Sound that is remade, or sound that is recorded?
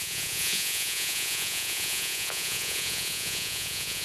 remade